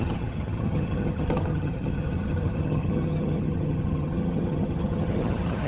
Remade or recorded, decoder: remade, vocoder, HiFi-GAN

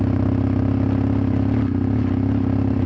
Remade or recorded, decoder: recorded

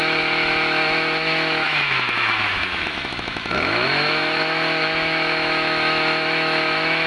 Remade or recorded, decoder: remade, autoencoder, DAC-VAE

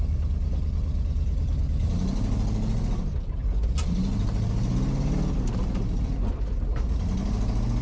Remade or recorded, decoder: recorded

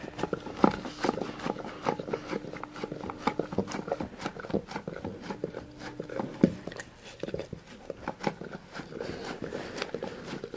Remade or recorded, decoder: recorded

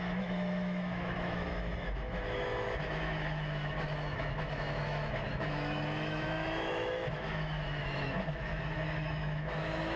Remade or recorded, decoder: remade, autoencoder, DAC-VAE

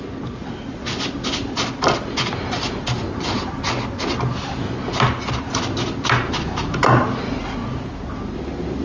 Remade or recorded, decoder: recorded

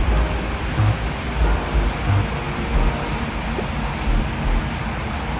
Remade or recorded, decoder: recorded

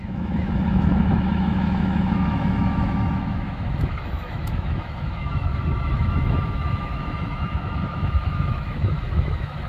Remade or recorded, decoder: remade, autoencoder, DAC-VAE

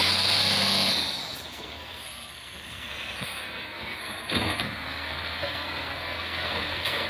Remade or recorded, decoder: remade, codec, SNAC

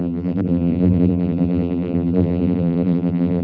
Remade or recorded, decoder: remade, vocoder, BigVGAN v2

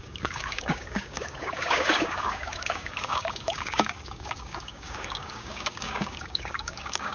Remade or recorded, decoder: remade, codec, DAC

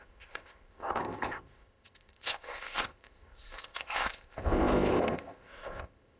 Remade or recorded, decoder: remade, codec, ZipCodec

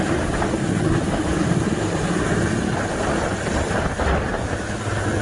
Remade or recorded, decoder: recorded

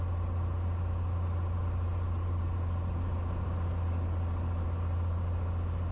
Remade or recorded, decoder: recorded